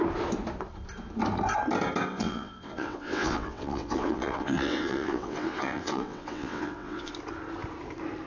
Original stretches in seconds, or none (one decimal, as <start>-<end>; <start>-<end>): 0.0-2.1; 7.1-8.3